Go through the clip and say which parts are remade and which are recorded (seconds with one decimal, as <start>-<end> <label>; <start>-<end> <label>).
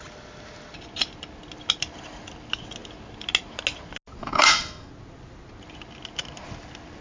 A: 0.0-4.2 recorded; 4.2-4.9 remade; 4.9-7.0 recorded